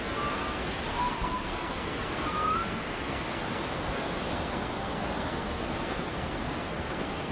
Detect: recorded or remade remade